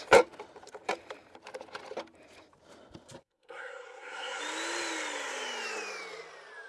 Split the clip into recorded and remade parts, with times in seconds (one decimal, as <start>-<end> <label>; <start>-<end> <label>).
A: 0.0-3.2 recorded; 3.2-4.4 remade; 4.4-6.7 recorded